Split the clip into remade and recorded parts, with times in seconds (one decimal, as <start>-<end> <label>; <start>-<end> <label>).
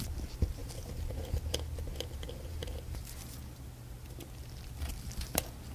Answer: 0.0-5.7 recorded